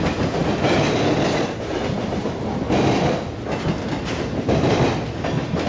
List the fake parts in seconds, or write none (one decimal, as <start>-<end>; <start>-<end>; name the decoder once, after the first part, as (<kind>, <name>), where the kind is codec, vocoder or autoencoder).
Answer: none